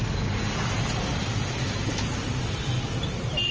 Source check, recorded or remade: recorded